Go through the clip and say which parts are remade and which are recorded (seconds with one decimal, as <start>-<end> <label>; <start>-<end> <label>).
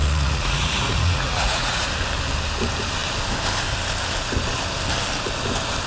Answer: 0.0-1.9 remade; 1.9-5.9 recorded